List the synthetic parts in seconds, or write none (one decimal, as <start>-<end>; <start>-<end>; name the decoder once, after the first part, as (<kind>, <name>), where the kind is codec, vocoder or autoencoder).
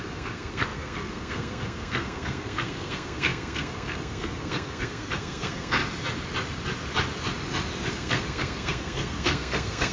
0.0-5.8 (codec, SNAC); 7.9-9.9